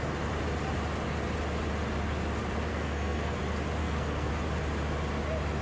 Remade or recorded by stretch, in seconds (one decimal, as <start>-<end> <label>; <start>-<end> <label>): 0.0-2.7 recorded; 2.7-3.4 remade; 3.4-3.8 recorded; 3.8-4.3 remade; 4.3-5.6 recorded